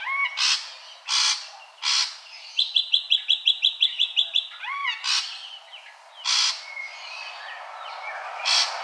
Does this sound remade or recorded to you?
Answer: recorded